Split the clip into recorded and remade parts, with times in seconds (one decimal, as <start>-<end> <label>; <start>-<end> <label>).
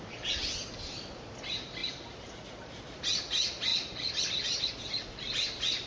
0.0-1.8 recorded; 1.8-2.5 remade; 2.5-5.9 recorded